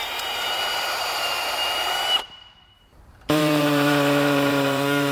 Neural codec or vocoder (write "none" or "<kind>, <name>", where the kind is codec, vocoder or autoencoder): vocoder, BigVGAN v2